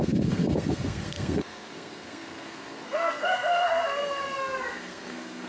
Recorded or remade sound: remade